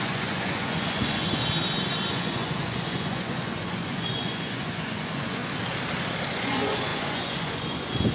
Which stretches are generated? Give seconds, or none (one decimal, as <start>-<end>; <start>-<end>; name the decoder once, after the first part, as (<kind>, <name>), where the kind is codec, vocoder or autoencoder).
0.0-1.4 (vocoder, Vocos); 2.1-5.4; 6.3-8.1